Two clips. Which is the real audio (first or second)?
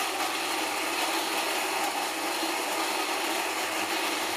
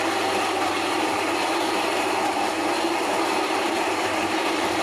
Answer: first